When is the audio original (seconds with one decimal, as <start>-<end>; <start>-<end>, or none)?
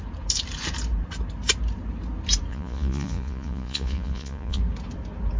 0.0-2.5; 4.6-5.4